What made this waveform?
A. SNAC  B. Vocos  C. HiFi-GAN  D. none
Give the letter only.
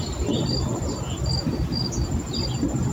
D